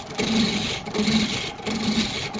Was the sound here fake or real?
real